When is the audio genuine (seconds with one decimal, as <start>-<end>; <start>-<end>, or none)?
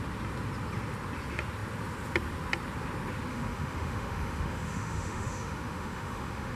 0.0-3.3